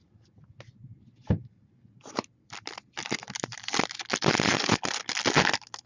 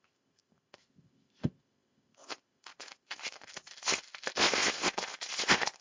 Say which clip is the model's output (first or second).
second